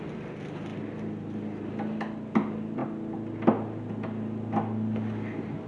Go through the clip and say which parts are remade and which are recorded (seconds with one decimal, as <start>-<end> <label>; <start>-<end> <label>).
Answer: 0.0-5.7 recorded